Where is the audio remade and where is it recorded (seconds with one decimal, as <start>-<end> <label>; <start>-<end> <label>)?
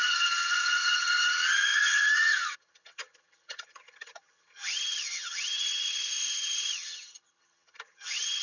0.0-8.4 remade